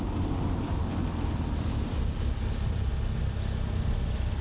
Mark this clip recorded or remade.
recorded